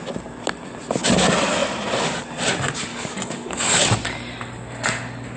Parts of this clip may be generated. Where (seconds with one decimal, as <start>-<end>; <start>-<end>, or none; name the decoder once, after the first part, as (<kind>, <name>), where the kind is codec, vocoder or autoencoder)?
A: 2.9-3.8 (codec, DAC)

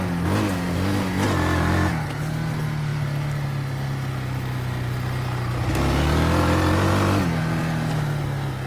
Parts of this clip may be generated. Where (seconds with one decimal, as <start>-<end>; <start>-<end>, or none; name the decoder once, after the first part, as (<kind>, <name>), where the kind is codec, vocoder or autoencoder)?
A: none

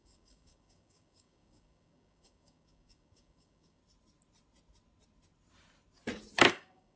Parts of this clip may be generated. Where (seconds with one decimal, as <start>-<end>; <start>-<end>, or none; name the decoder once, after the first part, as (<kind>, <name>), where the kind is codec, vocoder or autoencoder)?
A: 0.0-3.8 (codec, DAC); 6.5-7.0

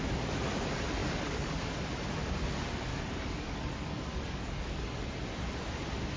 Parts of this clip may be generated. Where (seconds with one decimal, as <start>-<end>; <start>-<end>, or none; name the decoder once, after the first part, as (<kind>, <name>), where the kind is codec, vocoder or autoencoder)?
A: 1.0-1.7 (codec, DAC); 2.9-5.1

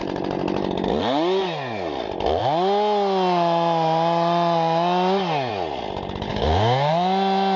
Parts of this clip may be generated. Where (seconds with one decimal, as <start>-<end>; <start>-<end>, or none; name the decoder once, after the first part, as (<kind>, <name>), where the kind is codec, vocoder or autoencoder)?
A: 6.3-6.9 (codec, DAC)

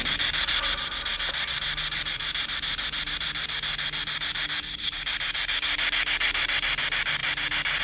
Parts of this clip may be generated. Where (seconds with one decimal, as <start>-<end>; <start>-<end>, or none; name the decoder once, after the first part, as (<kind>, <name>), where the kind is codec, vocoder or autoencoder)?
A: none

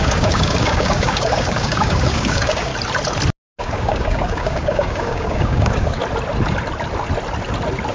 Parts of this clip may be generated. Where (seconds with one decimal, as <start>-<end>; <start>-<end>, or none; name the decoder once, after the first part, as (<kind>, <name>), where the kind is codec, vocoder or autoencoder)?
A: 0.0-2.7 (codec, DAC); 3.6-6.0

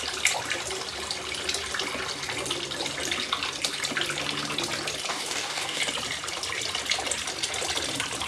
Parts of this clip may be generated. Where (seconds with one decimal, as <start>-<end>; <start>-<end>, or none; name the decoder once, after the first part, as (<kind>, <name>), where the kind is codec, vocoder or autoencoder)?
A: 5.1-5.8 (codec, DAC)